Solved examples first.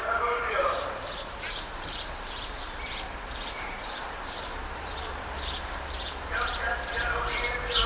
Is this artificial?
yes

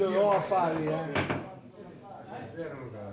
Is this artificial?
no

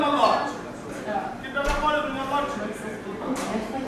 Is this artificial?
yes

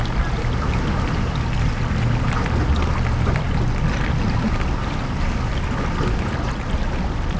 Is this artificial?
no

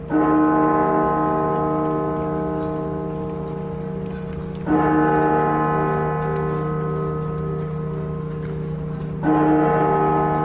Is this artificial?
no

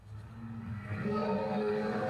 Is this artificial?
yes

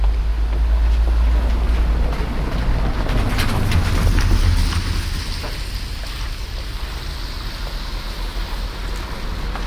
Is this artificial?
no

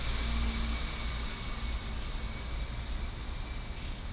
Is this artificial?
no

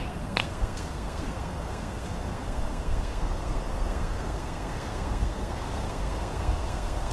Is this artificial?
yes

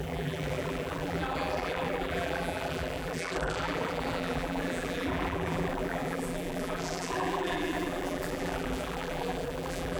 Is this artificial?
yes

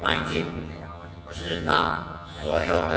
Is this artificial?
yes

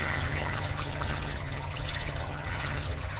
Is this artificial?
yes